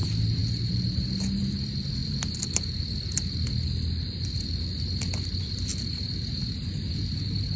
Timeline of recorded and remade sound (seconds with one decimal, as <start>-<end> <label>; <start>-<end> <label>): 0.0-7.6 recorded

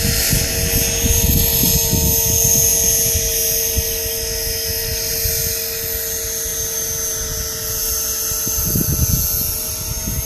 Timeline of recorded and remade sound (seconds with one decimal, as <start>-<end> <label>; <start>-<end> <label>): 0.0-10.3 recorded

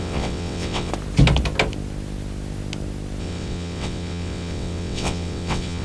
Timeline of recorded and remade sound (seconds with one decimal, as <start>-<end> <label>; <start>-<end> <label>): 0.0-0.9 remade; 0.9-3.2 recorded; 3.2-5.8 remade

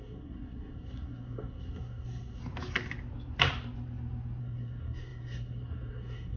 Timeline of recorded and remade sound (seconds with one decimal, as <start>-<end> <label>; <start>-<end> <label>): 0.0-2.4 remade; 2.4-4.4 recorded; 4.4-6.4 remade

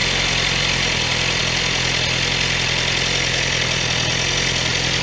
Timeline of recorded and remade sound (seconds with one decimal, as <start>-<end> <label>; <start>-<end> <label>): 0.0-1.4 remade; 1.4-5.0 recorded

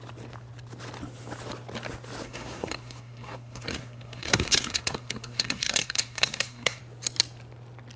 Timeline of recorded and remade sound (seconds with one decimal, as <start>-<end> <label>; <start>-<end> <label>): 0.0-2.2 recorded; 2.2-6.8 remade; 6.8-8.0 recorded